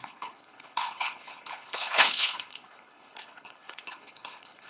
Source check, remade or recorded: remade